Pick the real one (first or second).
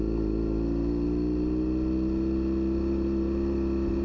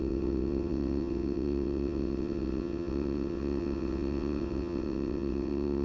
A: first